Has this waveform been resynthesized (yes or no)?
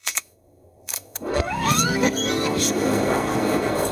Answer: yes